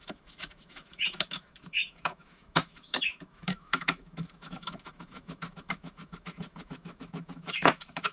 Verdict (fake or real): fake